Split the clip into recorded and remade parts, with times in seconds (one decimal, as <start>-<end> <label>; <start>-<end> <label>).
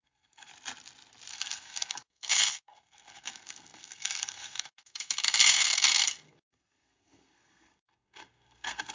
0.0-0.5 remade; 0.5-1.3 recorded; 1.3-8.9 remade